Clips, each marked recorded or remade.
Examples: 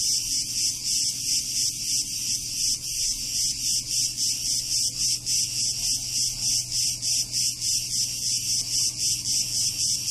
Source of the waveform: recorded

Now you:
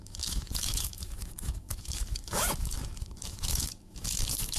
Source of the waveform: remade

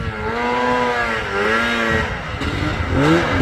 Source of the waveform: recorded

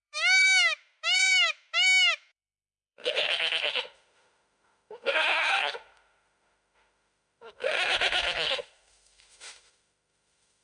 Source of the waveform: remade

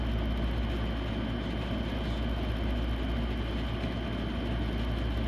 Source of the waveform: recorded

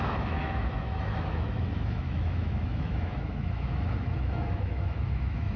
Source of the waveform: remade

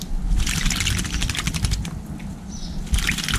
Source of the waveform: recorded